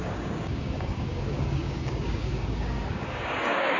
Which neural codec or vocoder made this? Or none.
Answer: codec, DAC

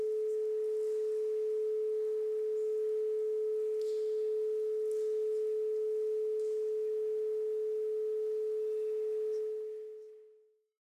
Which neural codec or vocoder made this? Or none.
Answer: none